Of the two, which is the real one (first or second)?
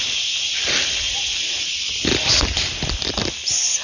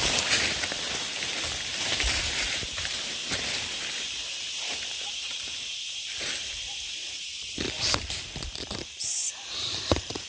first